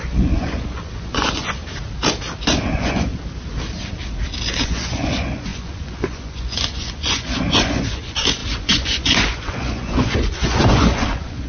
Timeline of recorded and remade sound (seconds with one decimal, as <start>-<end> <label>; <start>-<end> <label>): 0.0-1.6 remade; 1.6-2.7 recorded; 2.7-3.1 remade; 3.1-4.6 recorded; 4.6-11.5 remade

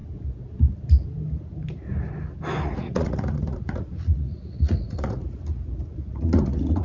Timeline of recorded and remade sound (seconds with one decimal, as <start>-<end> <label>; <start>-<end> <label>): 0.0-2.6 recorded; 2.6-5.2 remade; 5.2-5.9 recorded; 5.9-6.8 remade

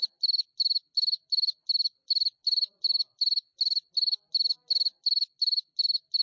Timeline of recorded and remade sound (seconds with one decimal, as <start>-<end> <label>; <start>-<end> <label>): 0.0-6.2 recorded